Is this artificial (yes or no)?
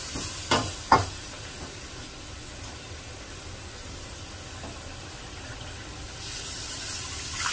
no